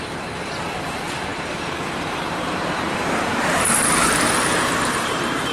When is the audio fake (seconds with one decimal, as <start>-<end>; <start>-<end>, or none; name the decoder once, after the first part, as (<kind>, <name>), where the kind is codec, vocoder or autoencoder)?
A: 0.0-5.5 (vocoder, BigVGAN v2)